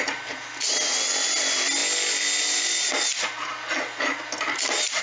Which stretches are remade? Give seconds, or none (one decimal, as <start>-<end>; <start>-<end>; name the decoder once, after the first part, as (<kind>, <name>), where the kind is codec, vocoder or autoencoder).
none